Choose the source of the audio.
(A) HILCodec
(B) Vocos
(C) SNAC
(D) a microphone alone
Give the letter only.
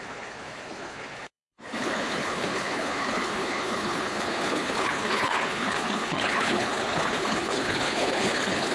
A